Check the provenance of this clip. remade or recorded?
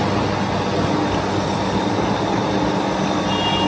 recorded